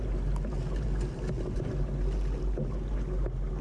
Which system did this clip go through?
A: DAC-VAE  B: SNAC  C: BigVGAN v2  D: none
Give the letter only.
D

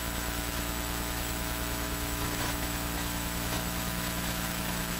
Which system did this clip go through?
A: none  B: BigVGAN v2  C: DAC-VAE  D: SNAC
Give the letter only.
C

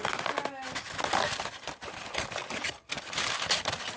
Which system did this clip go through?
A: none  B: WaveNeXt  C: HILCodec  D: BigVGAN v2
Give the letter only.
A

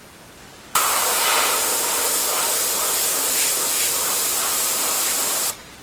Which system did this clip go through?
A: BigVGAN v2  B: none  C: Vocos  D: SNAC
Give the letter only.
A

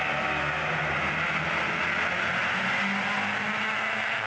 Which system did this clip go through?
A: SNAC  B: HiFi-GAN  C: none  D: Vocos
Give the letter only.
C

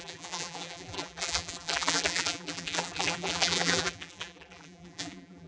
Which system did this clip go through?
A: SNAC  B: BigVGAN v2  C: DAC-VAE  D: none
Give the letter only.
B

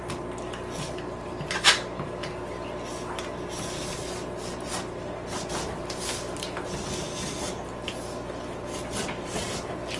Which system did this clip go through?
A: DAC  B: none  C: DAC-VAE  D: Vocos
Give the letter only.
B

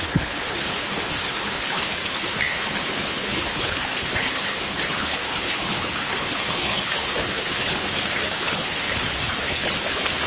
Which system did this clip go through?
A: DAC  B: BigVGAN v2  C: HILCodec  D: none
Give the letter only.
C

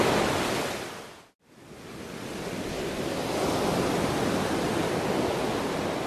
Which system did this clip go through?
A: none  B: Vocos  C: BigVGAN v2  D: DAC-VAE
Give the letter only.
A